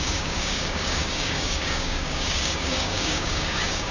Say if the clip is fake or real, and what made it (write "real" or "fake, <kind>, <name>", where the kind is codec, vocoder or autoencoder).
fake, codec, DAC